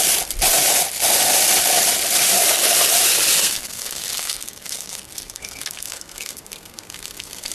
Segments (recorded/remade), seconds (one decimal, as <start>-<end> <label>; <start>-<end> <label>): 0.0-3.4 recorded; 3.4-7.5 remade